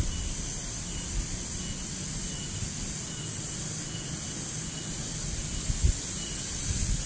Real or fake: real